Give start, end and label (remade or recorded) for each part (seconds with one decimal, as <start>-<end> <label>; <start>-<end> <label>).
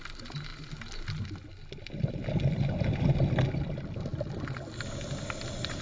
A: 0.0-5.8 recorded